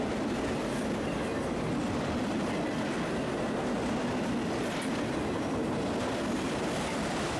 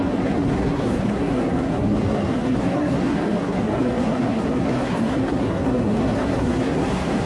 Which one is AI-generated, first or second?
second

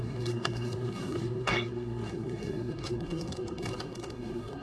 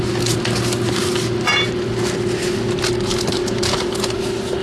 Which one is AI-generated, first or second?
first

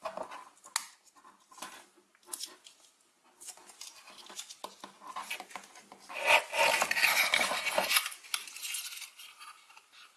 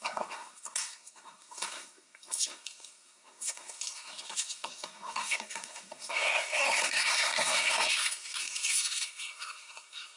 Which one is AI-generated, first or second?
second